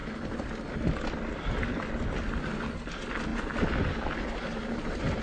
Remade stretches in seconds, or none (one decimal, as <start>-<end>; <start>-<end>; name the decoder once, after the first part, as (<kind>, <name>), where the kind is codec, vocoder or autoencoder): none